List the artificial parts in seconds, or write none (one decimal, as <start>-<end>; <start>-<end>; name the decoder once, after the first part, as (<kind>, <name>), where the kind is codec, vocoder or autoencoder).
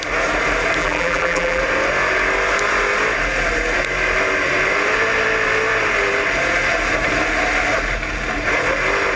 0.8-1.6 (vocoder, BigVGAN v2)